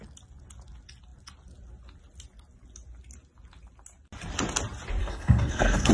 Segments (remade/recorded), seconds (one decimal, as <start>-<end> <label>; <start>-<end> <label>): 0.0-5.0 recorded; 5.0-5.9 remade